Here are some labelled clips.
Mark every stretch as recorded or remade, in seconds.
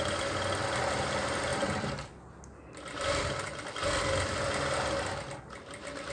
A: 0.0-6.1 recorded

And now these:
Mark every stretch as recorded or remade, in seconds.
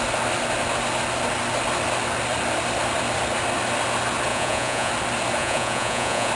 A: 0.0-4.3 recorded; 4.3-4.9 remade; 4.9-5.4 recorded; 5.4-6.3 remade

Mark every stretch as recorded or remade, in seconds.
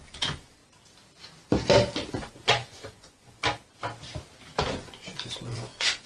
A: 0.0-0.6 remade; 0.6-2.1 recorded; 2.1-3.4 remade; 3.4-4.6 recorded; 4.6-6.1 remade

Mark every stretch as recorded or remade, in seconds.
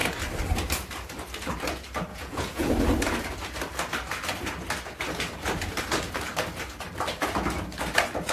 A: 0.0-2.1 recorded; 2.1-2.7 remade; 2.7-8.3 recorded